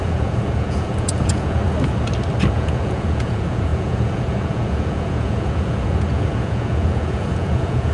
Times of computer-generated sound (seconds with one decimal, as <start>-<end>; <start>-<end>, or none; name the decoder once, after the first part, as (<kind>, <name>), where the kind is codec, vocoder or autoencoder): 0.0-1.6 (vocoder, Vocos); 2.5-7.9